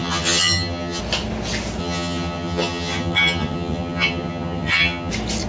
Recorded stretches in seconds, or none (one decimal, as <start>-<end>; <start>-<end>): 1.0-1.8; 5.1-5.5

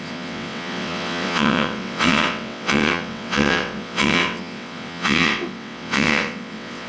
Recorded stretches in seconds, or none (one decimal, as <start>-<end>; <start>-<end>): none

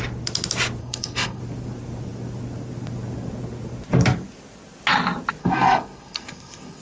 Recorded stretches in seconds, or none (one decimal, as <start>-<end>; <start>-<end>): 0.0-0.8; 1.4-5.4

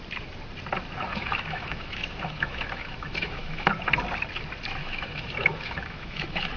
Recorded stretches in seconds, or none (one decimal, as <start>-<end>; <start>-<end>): 0.0-1.1; 3.7-4.8